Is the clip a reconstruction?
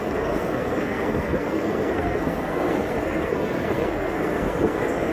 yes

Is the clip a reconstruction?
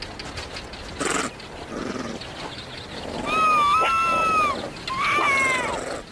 no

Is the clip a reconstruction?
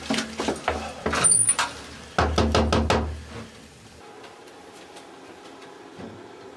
no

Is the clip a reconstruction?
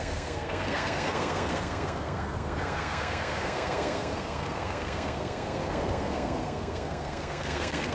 yes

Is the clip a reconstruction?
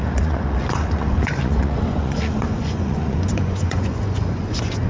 yes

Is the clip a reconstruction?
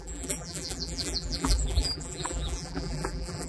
yes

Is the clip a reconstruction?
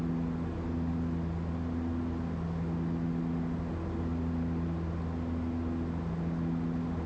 no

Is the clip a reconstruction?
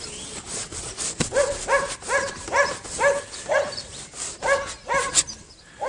no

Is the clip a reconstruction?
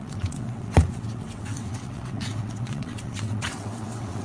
yes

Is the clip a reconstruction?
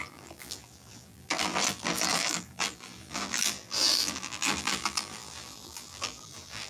yes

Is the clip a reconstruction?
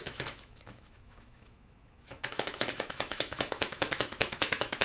yes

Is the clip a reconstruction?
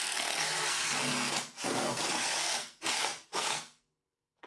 yes